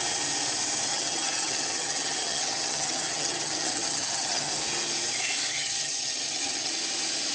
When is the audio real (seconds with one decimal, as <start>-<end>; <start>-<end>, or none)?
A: 0.0-0.9; 4.5-5.5; 6.7-7.3